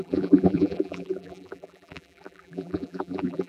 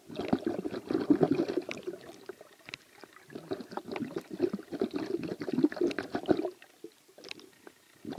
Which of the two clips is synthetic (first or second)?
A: first